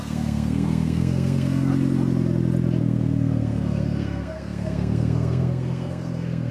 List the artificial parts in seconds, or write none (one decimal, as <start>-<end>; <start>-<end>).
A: 0.0-1.7; 2.8-6.5